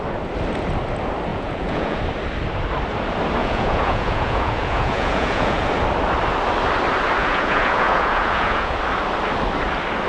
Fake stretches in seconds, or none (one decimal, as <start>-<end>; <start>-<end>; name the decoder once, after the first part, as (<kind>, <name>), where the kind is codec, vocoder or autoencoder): 1.3-2.0 (vocoder, Vocos); 3.4-5.7; 7.2-8.8